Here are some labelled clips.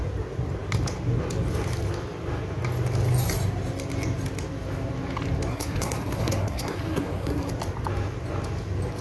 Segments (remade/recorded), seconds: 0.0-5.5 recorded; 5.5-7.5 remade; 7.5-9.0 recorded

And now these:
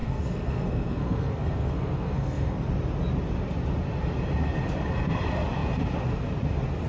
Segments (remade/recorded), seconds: 0.0-2.7 remade; 2.7-6.9 recorded